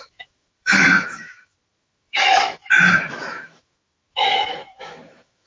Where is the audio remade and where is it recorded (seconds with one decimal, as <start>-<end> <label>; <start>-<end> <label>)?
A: 0.0-5.5 remade